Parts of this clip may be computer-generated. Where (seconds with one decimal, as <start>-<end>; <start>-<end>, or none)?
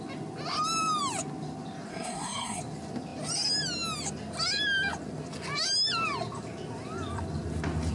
1.9-2.6